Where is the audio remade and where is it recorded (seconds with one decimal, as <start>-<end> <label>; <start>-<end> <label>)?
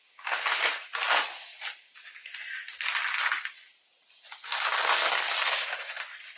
0.0-6.4 recorded